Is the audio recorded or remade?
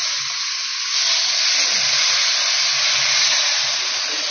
recorded